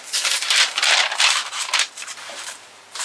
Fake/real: fake